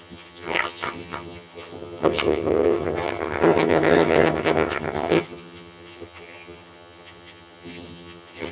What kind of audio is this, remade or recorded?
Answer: remade